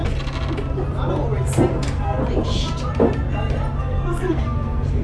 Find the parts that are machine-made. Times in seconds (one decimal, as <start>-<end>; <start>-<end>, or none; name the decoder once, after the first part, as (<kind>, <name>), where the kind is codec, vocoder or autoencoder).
1.7-2.2 (codec, SNAC); 3.8-5.0